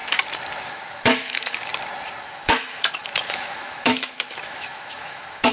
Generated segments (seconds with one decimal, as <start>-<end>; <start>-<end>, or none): 0.7-1.7; 2.2-5.5